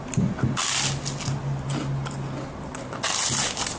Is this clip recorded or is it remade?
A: recorded